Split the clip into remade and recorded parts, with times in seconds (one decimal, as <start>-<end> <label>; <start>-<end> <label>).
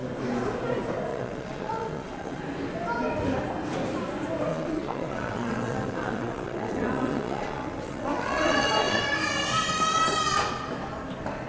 0.0-1.1 recorded; 1.1-2.4 remade; 2.4-4.5 recorded; 4.5-9.0 remade; 9.0-11.5 recorded